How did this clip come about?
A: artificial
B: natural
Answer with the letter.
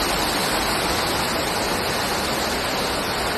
B